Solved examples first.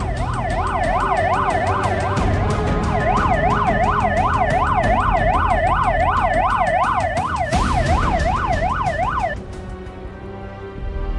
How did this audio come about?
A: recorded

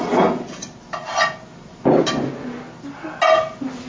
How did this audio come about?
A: recorded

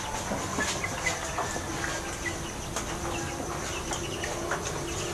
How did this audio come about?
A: recorded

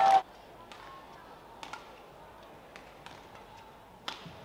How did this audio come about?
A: recorded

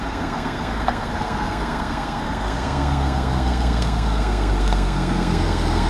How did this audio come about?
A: remade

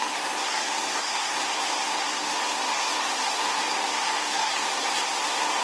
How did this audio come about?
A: remade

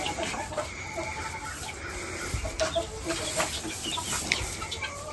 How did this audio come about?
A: recorded